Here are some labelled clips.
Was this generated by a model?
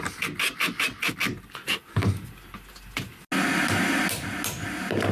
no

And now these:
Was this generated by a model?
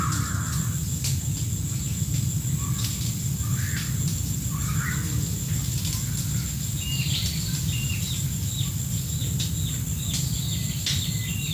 no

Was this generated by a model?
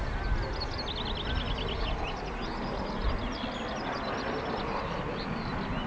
no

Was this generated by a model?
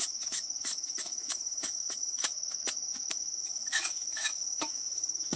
yes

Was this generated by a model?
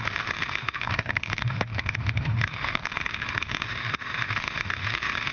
yes